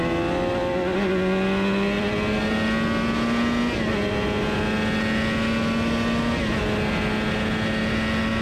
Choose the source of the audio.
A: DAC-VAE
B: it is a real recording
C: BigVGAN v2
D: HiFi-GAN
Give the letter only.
B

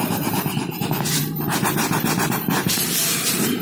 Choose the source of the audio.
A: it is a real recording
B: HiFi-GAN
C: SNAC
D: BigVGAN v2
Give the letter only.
D